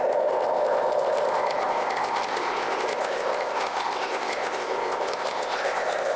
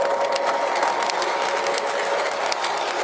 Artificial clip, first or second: first